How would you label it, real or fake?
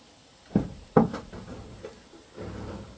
fake